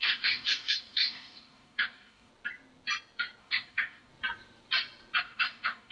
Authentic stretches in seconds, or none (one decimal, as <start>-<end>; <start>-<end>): 2.3-3.4; 4.1-5.2